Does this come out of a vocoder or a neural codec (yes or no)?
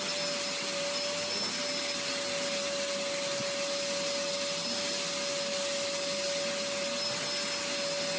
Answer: no